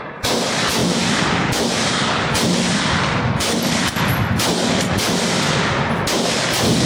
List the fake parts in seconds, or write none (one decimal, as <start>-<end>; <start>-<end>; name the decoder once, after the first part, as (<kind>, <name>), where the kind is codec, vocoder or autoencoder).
none